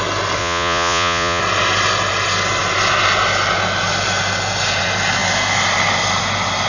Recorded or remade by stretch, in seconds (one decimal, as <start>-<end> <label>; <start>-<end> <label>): 0.0-0.4 recorded; 0.4-1.4 remade; 1.4-6.7 recorded